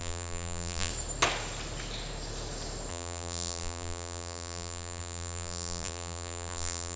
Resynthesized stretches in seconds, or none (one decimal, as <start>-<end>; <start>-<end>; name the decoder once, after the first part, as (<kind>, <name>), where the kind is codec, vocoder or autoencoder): 0.0-0.9 (vocoder, BigVGAN v2); 2.9-7.0